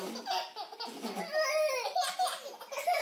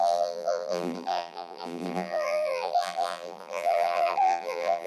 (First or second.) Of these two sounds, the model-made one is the second